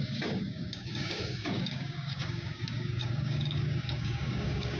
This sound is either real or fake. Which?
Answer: fake